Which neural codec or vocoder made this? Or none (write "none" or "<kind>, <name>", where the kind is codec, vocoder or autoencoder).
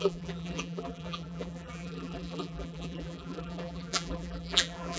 vocoder, BigVGAN v2